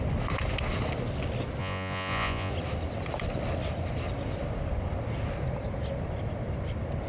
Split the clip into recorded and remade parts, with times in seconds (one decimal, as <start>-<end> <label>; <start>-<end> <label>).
0.0-1.6 recorded; 1.6-2.5 remade; 2.5-7.1 recorded